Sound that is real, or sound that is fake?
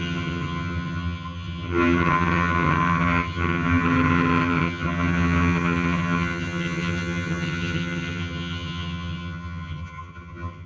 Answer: fake